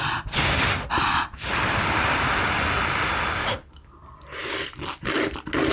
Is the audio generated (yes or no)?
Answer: no